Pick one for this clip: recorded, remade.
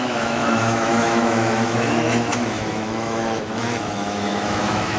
remade